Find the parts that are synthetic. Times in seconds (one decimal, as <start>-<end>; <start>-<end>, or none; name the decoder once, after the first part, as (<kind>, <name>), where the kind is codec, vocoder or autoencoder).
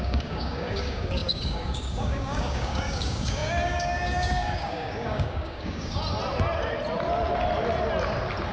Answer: 0.0-6.0 (codec, DAC)